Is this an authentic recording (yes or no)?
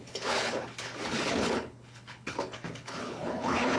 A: no